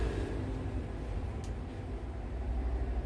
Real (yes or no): yes